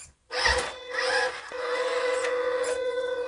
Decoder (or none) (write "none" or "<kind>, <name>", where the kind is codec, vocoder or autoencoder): vocoder, Vocos